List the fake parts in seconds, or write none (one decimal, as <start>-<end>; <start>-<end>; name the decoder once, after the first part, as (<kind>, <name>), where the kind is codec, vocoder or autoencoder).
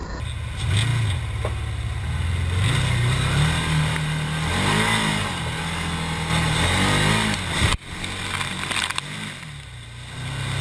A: none